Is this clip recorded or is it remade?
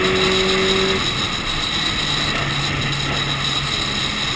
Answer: recorded